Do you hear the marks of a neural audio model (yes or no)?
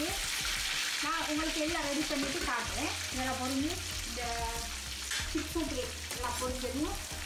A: no